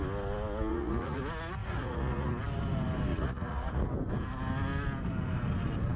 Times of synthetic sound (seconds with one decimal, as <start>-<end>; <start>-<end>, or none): 0.7-1.2; 1.6-2.3; 3.1-3.9